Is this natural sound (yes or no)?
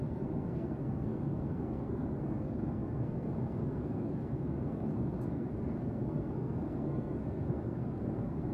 no